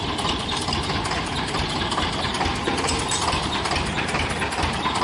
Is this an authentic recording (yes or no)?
no